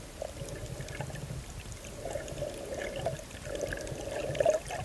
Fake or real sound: real